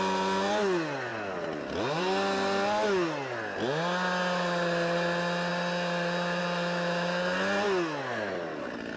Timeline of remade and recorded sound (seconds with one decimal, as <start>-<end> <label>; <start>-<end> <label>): 0.0-9.0 recorded